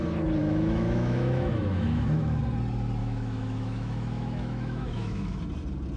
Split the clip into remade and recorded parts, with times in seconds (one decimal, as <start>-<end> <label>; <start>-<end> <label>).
0.0-0.4 recorded; 0.4-2.4 remade; 2.4-3.0 recorded; 3.0-5.4 remade; 5.4-6.0 recorded

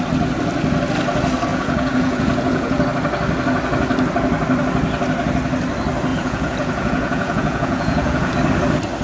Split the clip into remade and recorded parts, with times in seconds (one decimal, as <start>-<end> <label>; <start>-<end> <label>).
0.0-1.5 recorded; 1.5-2.8 remade; 2.8-6.1 recorded; 6.1-8.3 remade; 8.3-9.0 recorded

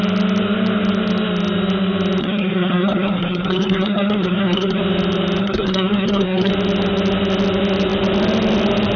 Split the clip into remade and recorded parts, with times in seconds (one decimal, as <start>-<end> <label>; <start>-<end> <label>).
0.0-2.2 recorded; 2.2-4.8 remade; 4.8-5.4 recorded; 5.4-6.5 remade; 6.5-9.0 recorded

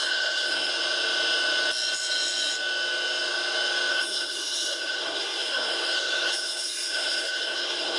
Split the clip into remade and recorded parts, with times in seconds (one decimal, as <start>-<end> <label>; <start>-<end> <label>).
0.0-0.7 remade; 0.7-3.9 recorded; 3.9-8.0 remade

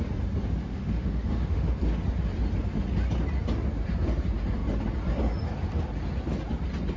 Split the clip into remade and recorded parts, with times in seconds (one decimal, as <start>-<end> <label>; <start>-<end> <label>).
0.0-0.6 recorded; 0.6-1.7 remade; 1.7-7.0 recorded

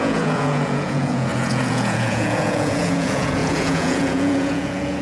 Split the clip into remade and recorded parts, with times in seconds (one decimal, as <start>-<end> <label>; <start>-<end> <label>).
0.0-5.0 remade